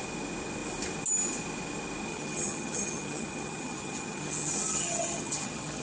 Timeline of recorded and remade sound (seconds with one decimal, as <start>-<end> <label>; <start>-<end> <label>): 0.0-2.1 recorded; 2.1-5.8 remade